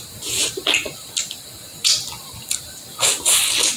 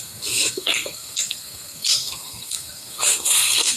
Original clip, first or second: first